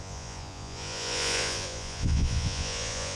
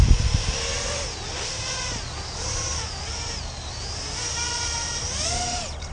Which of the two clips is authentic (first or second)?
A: second